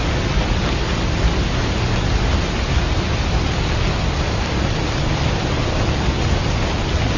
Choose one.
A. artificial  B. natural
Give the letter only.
B